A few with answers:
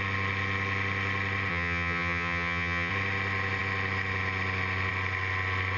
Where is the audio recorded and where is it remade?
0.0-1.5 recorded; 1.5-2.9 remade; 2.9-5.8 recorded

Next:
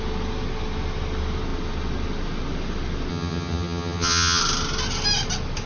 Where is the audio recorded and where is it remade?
0.0-3.1 recorded; 3.1-4.4 remade; 4.4-5.7 recorded

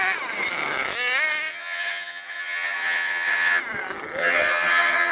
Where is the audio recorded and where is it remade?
0.0-1.5 recorded; 1.5-3.6 remade; 3.6-4.2 recorded; 4.2-5.1 remade

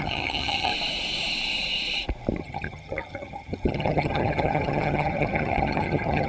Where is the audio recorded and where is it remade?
0.0-0.7 remade; 0.7-2.4 recorded; 2.4-6.3 remade

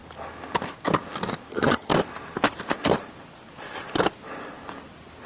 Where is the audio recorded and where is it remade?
0.0-1.5 recorded; 1.5-1.9 remade; 1.9-5.3 recorded

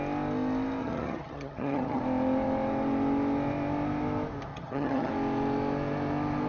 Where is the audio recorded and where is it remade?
0.0-0.8 recorded; 0.8-2.0 remade; 2.0-4.5 recorded; 4.5-5.1 remade; 5.1-6.5 recorded